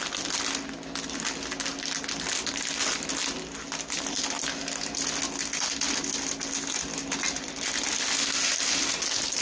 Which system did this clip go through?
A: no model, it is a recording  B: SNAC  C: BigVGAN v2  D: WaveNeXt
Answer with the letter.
A